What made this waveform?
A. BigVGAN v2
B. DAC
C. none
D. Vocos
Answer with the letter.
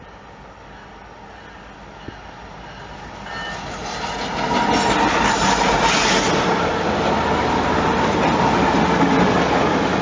C